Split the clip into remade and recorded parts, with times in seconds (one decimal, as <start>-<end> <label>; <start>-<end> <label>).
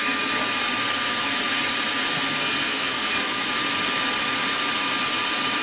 0.0-2.4 recorded; 2.4-3.5 remade; 3.5-5.6 recorded